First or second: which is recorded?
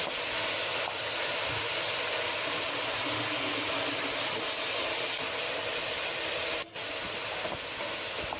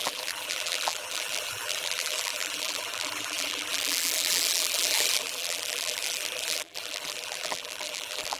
first